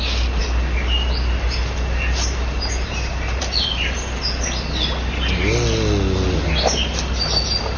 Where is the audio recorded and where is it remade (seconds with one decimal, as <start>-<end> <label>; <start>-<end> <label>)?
0.0-7.8 recorded